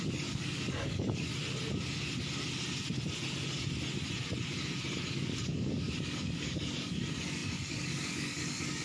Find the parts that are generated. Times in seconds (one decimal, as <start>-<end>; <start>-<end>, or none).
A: 0.0-1.3; 5.1-8.8